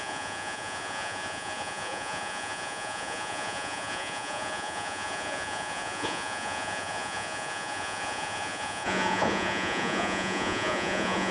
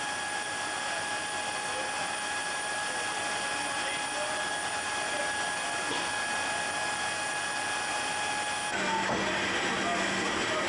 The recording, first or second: second